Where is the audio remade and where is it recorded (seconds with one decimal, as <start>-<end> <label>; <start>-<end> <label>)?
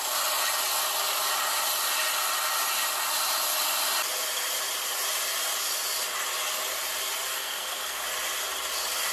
0.0-7.3 recorded; 7.3-8.0 remade; 8.0-9.1 recorded